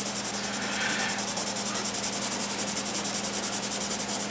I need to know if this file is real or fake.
real